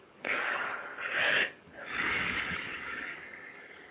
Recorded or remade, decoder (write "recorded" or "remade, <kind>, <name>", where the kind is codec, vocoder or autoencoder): remade, codec, DAC